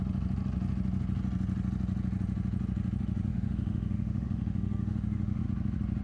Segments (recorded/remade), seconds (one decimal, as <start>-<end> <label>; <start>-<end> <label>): 0.0-3.3 recorded; 3.3-5.4 remade; 5.4-6.0 recorded